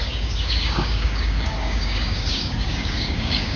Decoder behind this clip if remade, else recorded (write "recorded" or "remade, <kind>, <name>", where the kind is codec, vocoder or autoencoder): remade, codec, DAC